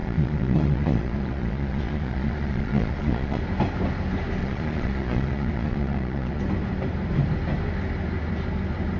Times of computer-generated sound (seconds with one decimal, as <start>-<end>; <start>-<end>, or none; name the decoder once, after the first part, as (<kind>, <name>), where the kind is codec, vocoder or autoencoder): 0.0-3.4 (vocoder, Vocos); 4.4-6.4